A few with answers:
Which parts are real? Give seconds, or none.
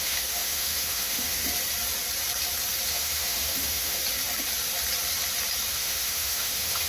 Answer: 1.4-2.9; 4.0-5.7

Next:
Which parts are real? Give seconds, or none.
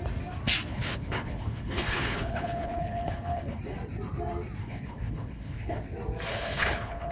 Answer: 0.0-0.7; 3.6-4.6; 5.8-6.3